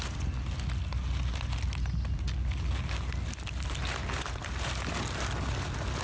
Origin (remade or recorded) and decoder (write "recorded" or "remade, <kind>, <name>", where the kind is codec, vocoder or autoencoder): recorded